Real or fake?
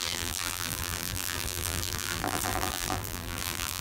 fake